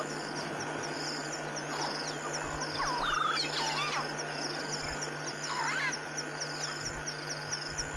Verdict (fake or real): real